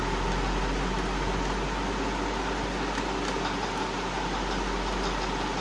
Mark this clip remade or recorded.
recorded